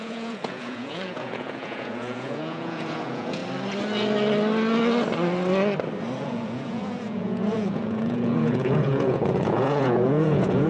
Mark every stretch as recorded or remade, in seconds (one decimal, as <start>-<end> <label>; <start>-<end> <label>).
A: 0.0-3.4 remade; 3.4-6.2 recorded; 6.2-10.7 remade